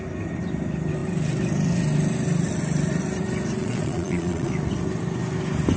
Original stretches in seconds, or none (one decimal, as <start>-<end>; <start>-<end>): 0.0-3.6; 4.5-5.8